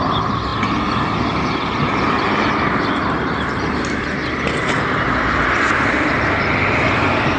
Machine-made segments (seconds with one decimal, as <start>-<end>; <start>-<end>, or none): none